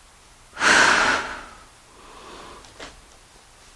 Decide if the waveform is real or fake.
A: real